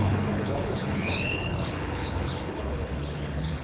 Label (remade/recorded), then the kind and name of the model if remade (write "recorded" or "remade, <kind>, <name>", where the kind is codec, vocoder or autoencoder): remade, codec, HILCodec